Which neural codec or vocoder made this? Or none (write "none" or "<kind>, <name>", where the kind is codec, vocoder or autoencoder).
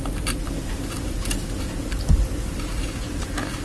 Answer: none